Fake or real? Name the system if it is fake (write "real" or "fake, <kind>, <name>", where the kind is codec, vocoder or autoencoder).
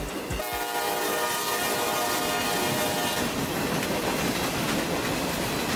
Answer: real